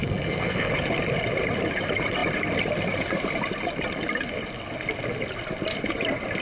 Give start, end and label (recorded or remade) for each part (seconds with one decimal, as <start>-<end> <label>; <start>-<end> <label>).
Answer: 0.0-0.7 remade; 0.7-6.4 recorded

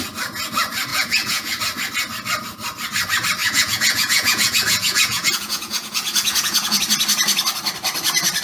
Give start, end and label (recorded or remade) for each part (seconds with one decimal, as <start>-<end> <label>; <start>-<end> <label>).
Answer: 0.0-0.9 recorded; 0.9-1.6 remade; 1.6-3.4 recorded; 3.4-6.8 remade; 6.8-8.4 recorded